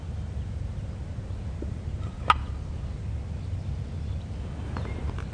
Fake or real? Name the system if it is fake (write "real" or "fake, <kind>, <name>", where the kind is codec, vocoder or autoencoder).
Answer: real